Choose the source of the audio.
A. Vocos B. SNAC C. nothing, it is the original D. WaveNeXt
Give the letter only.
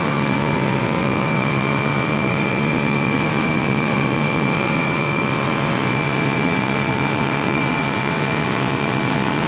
D